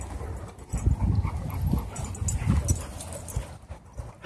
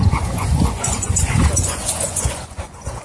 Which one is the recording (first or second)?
first